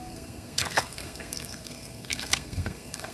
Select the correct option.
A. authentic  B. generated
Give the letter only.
B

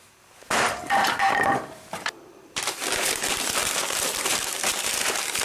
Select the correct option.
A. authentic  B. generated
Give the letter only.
B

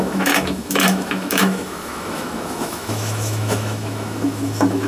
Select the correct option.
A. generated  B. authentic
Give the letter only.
A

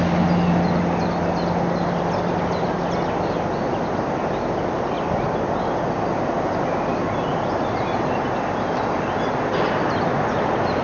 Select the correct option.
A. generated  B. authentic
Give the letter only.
B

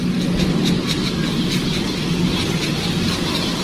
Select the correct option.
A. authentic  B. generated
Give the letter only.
A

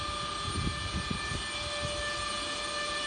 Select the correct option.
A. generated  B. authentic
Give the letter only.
B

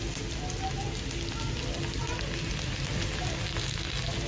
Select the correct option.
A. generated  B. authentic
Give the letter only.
B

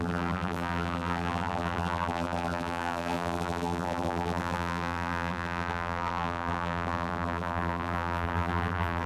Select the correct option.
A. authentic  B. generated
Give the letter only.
B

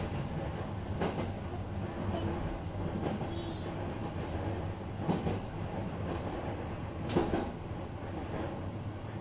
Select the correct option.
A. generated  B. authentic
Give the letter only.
B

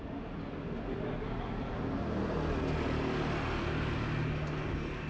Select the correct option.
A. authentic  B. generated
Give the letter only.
A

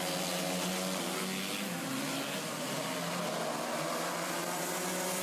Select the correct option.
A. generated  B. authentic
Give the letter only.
B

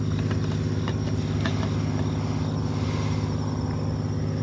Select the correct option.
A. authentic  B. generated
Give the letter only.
A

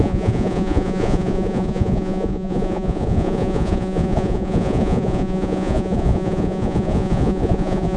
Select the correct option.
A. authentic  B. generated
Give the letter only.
B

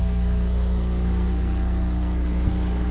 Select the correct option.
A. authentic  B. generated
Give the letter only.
B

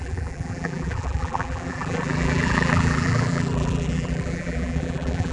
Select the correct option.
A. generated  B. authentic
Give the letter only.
A